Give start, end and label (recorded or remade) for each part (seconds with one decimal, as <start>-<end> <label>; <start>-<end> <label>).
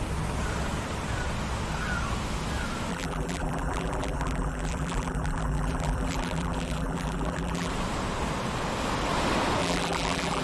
0.0-2.9 recorded; 2.9-7.7 remade; 7.7-9.6 recorded; 9.6-10.4 remade